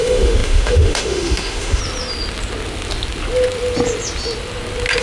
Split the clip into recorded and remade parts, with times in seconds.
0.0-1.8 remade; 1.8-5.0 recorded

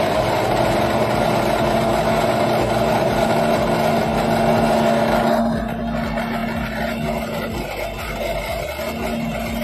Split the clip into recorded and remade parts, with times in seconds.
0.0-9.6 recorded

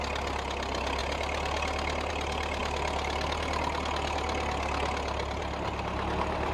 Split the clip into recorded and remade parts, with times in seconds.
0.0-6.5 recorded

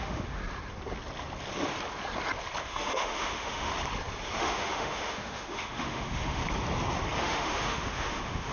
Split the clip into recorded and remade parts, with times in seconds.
0.0-0.4 remade; 0.4-2.6 recorded; 2.6-3.7 remade; 3.7-4.4 recorded; 4.4-6.4 remade; 6.4-7.2 recorded; 7.2-8.5 remade